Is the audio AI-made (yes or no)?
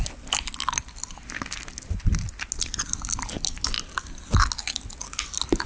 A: no